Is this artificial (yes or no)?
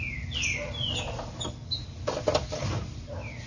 no